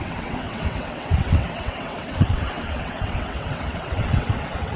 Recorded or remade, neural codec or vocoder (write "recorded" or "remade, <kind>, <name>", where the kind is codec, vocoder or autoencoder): remade, vocoder, WaveNeXt